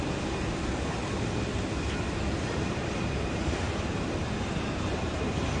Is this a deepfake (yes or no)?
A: yes